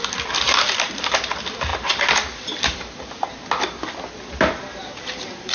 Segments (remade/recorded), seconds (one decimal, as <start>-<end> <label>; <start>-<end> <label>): 0.0-5.5 recorded